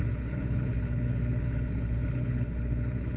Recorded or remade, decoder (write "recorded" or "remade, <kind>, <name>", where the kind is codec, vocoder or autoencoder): remade, codec, HILCodec